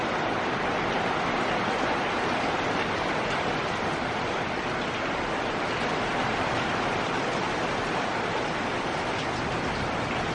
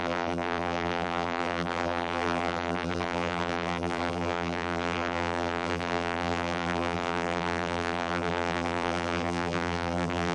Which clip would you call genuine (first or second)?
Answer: first